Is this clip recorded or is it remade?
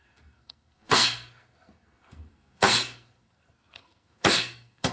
remade